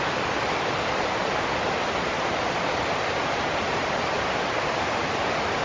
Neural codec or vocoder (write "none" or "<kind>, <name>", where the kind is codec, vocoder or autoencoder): none